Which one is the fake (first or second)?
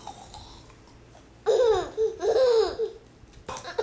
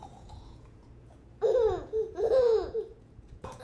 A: second